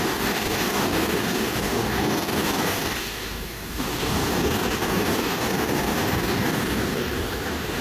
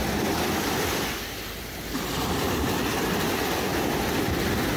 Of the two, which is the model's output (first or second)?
first